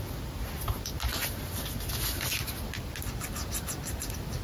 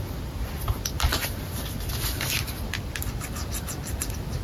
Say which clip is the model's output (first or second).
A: second